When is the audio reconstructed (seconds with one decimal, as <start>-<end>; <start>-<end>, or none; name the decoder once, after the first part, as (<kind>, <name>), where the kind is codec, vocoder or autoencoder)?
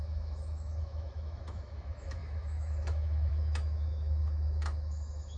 0.0-5.4 (autoencoder, DAC-VAE)